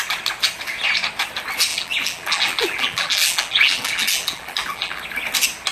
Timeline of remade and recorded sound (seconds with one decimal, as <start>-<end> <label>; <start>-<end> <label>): 0.0-1.7 recorded; 1.7-5.0 remade; 5.0-5.7 recorded